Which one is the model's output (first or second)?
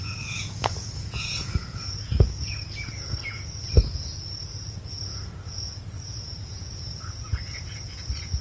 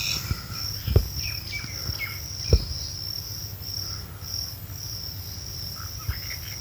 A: first